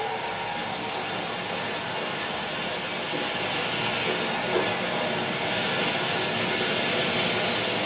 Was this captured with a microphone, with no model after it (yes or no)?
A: yes